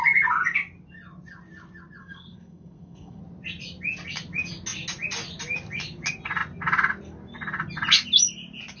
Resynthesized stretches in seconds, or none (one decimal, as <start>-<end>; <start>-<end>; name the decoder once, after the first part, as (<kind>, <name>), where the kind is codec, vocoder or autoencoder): 2.0-3.2 (codec, SNAC)